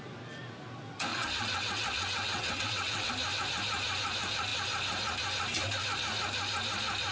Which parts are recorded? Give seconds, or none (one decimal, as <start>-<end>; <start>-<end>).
0.0-1.1; 3.1-7.1

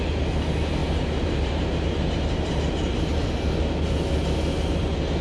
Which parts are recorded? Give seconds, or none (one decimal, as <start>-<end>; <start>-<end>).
0.0-0.8; 3.3-5.2